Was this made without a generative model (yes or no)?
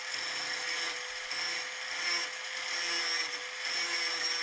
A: yes